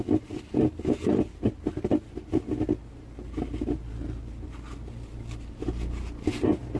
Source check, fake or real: real